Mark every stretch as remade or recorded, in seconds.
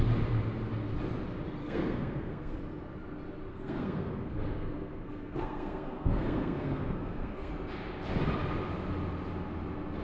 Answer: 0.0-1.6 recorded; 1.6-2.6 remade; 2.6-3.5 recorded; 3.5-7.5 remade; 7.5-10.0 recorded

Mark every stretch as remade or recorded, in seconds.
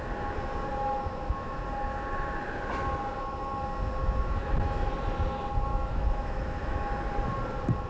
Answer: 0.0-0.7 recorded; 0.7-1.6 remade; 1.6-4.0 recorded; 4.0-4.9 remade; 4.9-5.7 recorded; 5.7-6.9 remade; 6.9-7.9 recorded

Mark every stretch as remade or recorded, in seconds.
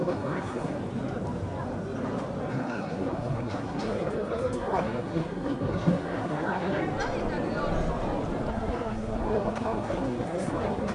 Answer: 0.0-0.8 remade; 0.8-2.5 recorded; 2.5-6.8 remade; 6.8-8.5 recorded; 8.5-10.9 remade